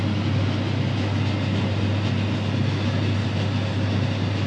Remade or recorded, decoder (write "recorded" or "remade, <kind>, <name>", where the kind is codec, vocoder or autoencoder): recorded